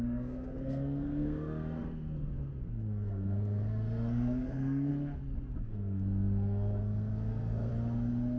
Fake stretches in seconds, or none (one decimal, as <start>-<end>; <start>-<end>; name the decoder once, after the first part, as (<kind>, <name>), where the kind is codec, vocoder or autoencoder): 0.0-4.9 (codec, SNAC); 5.6-7.7